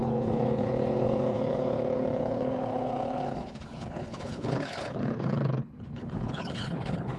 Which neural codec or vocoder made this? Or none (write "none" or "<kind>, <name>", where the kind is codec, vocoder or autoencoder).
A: codec, HILCodec